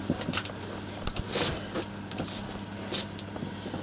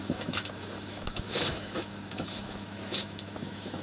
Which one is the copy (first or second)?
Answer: second